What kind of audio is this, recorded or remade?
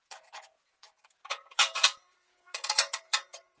remade